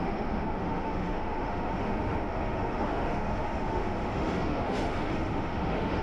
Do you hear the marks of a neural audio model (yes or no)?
yes